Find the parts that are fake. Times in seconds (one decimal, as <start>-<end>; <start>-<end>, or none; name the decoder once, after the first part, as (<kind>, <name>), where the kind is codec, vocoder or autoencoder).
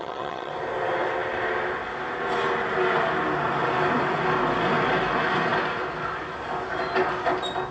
0.0-0.5 (vocoder, HiFi-GAN)